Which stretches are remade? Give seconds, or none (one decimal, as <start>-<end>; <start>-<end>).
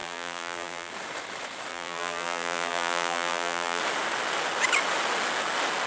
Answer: 0.0-0.9; 1.7-3.8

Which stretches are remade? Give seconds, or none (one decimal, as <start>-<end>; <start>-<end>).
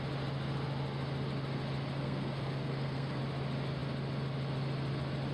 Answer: 2.0-3.2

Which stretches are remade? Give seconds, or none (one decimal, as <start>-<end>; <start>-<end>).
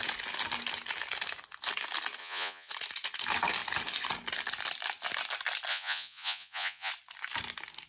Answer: 2.2-2.7; 5.7-6.9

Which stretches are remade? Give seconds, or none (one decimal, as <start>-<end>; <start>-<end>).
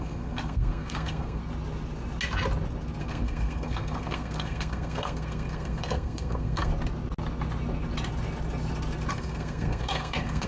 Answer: 0.0-1.4; 3.0-6.7; 9.1-10.5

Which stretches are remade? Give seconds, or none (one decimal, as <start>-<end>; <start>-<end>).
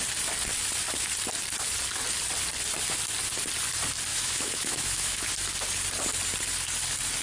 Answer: 4.1-5.3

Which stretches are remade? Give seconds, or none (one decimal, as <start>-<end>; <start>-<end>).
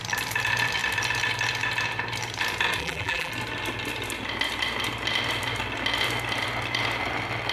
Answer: 2.8-3.3